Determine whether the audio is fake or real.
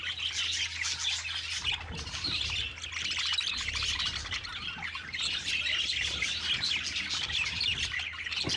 real